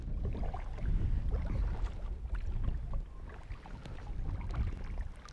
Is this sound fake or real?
real